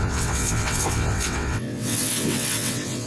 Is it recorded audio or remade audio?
remade